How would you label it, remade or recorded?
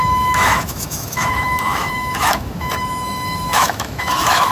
remade